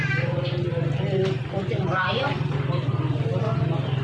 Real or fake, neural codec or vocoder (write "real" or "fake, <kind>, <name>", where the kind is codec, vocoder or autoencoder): fake, vocoder, BigVGAN v2